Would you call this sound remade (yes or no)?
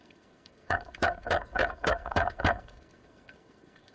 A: yes